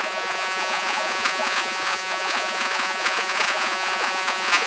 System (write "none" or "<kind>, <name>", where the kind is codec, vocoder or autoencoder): vocoder, Vocos